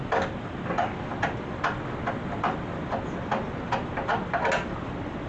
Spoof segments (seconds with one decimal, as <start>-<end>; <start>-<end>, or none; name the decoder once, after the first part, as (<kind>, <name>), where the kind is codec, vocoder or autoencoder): none